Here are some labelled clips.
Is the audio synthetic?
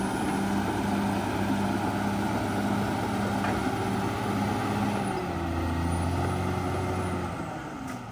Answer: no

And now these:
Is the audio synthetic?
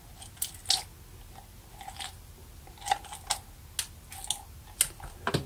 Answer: no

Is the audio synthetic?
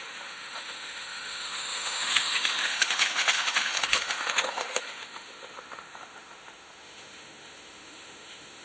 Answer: yes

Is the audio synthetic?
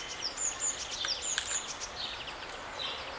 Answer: no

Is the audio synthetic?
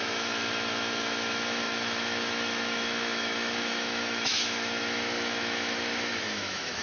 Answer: yes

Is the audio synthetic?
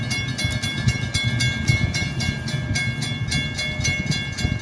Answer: no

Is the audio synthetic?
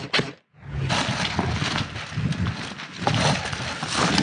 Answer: no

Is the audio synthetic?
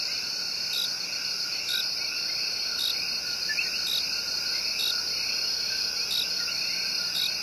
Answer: no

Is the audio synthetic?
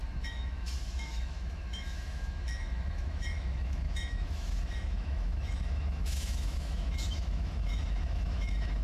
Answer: yes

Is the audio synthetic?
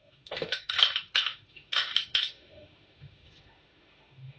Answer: yes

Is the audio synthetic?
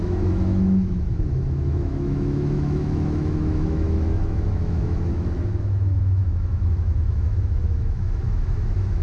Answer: yes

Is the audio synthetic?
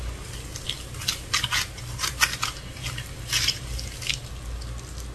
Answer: no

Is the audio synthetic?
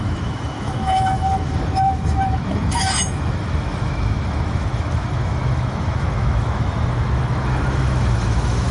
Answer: yes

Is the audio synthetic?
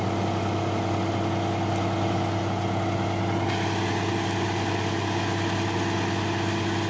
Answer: no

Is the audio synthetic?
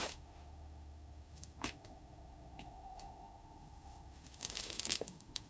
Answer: yes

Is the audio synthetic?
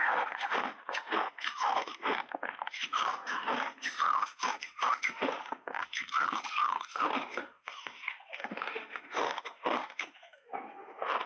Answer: yes